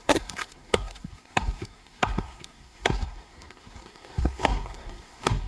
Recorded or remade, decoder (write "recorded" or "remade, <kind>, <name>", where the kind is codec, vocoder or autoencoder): remade, codec, SNAC